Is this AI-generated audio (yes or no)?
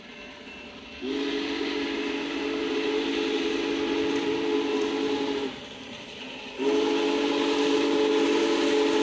no